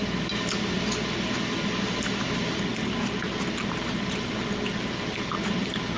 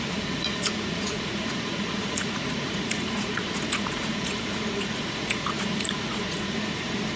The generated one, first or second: second